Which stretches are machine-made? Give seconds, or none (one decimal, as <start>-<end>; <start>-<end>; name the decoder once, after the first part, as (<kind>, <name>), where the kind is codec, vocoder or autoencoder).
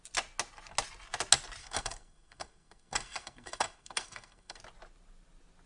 1.6-4.6 (codec, SNAC)